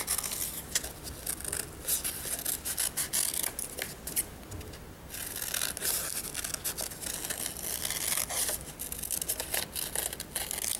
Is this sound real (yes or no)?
yes